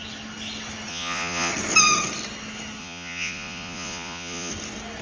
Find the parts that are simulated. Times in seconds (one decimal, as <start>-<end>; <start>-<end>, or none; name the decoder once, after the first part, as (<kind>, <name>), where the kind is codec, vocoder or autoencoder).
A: 0.9-1.5 (vocoder, Vocos); 2.8-4.5